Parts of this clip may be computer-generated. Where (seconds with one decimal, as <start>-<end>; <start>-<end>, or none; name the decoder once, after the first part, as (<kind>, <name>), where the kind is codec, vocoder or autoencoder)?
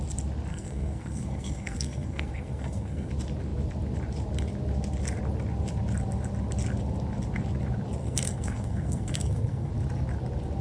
0.5-3.1 (codec, SNAC); 8.0-9.7